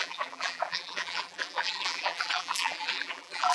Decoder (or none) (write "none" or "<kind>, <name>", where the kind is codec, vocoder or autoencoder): vocoder, BigVGAN v2